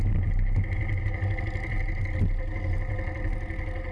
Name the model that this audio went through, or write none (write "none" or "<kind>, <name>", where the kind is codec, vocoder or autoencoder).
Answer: none